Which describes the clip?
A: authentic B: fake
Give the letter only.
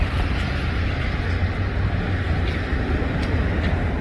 A